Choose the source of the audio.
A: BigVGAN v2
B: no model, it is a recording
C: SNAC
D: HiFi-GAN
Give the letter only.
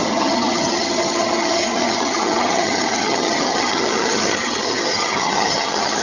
D